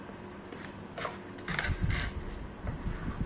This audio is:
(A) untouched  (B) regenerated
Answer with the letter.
A